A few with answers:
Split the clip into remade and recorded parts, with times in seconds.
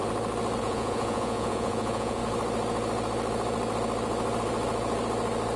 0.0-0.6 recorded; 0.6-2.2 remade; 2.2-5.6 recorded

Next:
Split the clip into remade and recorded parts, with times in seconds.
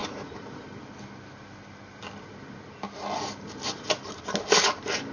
0.0-0.8 remade; 0.8-5.1 recorded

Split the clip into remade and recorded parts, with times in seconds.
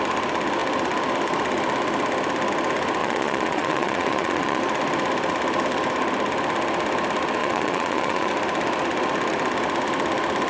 0.0-3.0 recorded; 3.0-4.6 remade; 4.6-7.4 recorded; 7.4-8.3 remade; 8.3-10.5 recorded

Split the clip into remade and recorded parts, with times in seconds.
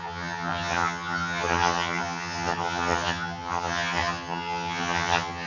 0.0-5.5 remade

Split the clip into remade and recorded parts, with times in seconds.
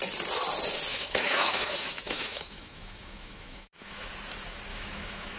0.0-0.9 recorded; 0.9-4.1 remade; 4.1-4.7 recorded; 4.7-5.4 remade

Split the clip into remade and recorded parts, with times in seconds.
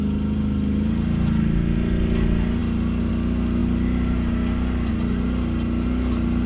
0.0-6.5 recorded